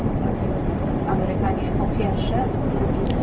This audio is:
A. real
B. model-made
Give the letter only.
B